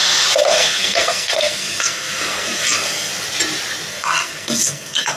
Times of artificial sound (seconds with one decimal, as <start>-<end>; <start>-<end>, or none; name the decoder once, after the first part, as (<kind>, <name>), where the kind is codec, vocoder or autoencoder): 0.0-3.1 (codec, SNAC); 3.9-5.2